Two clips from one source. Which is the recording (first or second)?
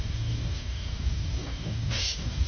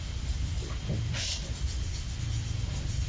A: second